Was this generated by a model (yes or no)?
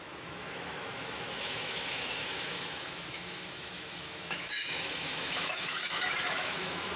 yes